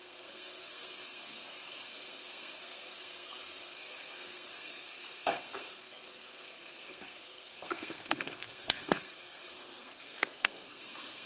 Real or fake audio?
fake